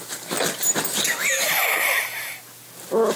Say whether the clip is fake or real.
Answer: real